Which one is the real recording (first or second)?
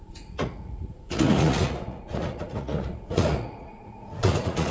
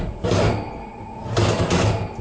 second